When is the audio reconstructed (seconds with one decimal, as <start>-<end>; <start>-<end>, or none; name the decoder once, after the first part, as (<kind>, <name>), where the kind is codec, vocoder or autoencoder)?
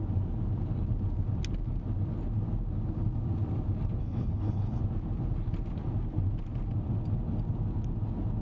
4.0-4.8 (codec, HILCodec)